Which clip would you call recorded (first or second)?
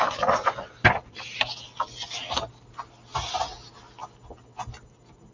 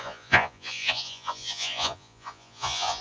first